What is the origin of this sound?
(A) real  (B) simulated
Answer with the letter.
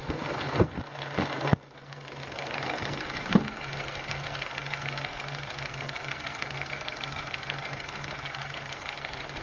B